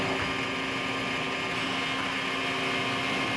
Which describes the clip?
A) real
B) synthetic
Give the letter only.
A